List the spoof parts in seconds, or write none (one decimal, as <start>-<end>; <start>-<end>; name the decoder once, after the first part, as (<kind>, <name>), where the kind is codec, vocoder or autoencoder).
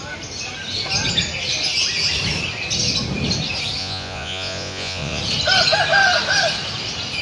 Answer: 3.8-5.2 (vocoder, Vocos)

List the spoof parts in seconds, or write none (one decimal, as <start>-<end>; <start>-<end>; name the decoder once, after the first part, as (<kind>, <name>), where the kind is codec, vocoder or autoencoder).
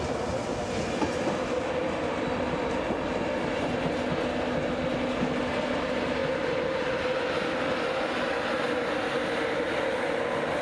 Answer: none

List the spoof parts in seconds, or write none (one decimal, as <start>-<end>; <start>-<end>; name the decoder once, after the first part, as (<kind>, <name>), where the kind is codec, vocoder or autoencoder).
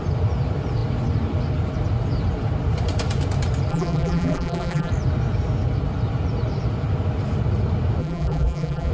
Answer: 3.7-4.9 (vocoder, BigVGAN v2); 8.0-8.9